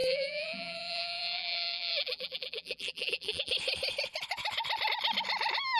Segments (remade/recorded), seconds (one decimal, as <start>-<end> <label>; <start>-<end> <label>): 0.0-3.5 remade; 3.5-5.8 recorded

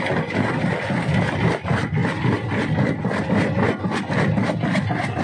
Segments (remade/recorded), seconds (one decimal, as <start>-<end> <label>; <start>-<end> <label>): 0.0-0.6 recorded; 0.6-1.6 remade; 1.6-5.2 recorded

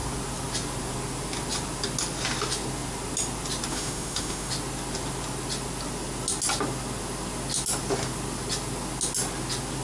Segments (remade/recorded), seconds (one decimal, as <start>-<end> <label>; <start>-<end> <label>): 0.0-3.7 recorded; 3.7-4.5 remade; 4.5-9.8 recorded

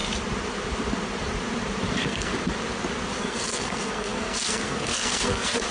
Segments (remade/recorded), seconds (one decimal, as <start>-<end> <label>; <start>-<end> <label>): 0.0-1.9 recorded; 1.9-2.3 remade; 2.3-3.2 recorded; 3.2-5.7 remade

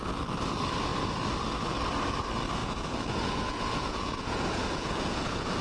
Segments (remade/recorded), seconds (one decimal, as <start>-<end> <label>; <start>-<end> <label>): 0.0-2.6 recorded; 2.6-5.6 remade

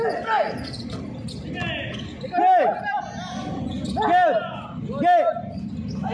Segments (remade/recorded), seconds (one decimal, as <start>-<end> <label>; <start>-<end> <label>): 0.0-6.1 recorded

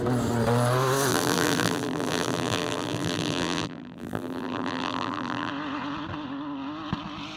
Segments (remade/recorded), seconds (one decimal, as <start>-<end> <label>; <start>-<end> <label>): 0.0-1.1 recorded; 1.1-5.5 remade; 5.5-7.4 recorded